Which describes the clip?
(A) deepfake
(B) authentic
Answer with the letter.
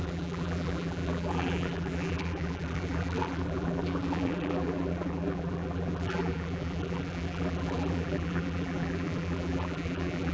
A